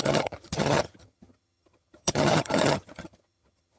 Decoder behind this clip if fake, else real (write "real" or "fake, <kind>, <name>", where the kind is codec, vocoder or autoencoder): fake, vocoder, HiFi-GAN